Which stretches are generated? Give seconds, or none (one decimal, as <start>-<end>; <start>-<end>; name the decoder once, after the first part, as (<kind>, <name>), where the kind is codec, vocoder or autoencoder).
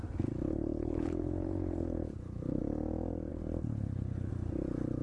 0.5-2.6 (codec, HILCodec); 3.3-4.3